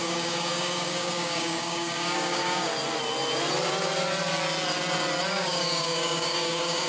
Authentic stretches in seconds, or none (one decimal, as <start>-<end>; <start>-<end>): 2.7-5.3